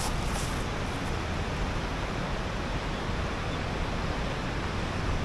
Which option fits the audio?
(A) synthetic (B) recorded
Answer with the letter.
B